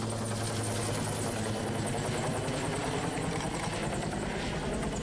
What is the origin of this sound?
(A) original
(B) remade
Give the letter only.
A